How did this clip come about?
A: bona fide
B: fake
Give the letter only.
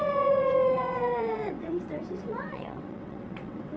B